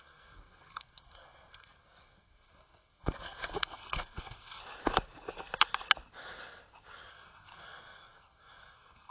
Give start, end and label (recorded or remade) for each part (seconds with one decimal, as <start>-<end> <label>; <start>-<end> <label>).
0.0-4.6 remade; 4.6-7.1 recorded; 7.1-9.1 remade